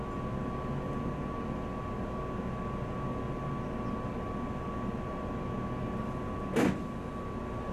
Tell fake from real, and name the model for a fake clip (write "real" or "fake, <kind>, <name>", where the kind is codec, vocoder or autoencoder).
real